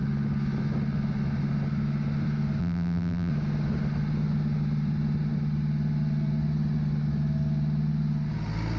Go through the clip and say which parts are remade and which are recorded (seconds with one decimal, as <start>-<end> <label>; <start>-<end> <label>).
0.0-2.6 recorded; 2.6-3.3 remade; 3.3-8.8 recorded